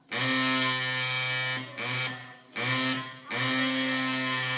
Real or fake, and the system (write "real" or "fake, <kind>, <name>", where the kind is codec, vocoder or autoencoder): real